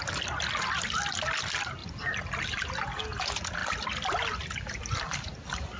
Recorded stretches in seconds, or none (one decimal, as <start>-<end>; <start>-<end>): 0.0-5.8